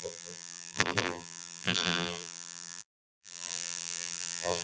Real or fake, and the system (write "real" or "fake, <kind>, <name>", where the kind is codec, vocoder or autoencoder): fake, vocoder, BigVGAN v2